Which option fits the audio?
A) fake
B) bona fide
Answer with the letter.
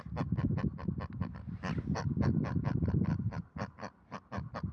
B